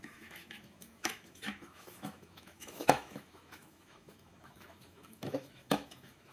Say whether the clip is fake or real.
fake